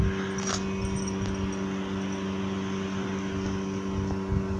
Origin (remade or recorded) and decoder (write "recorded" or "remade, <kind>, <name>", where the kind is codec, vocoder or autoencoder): recorded